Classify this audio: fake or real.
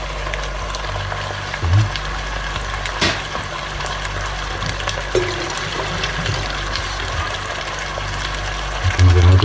real